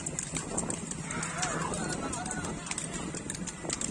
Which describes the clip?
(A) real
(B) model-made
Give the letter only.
A